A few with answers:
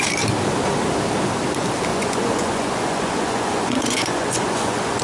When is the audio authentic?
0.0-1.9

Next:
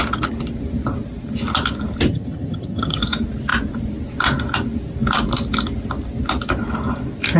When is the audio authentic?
0.0-2.1; 3.0-7.4